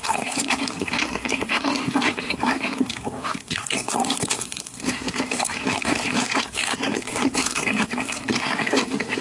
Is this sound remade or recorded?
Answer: remade